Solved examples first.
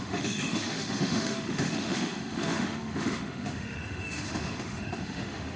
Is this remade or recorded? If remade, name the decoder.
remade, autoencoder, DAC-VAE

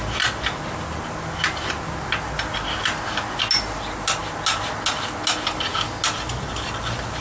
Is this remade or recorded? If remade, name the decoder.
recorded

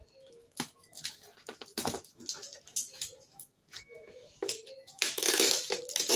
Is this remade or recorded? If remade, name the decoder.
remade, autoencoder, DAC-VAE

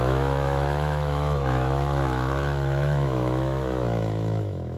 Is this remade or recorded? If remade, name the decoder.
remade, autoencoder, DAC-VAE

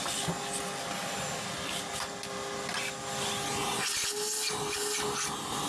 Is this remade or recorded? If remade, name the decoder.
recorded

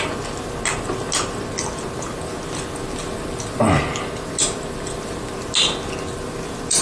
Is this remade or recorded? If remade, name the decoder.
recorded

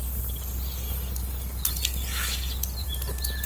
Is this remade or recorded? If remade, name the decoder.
recorded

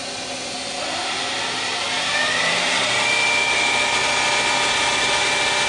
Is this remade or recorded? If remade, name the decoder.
recorded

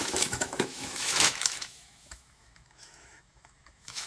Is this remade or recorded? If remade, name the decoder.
remade, autoencoder, DAC-VAE